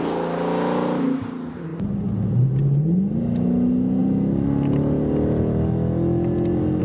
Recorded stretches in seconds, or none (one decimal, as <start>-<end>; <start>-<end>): 0.0-6.8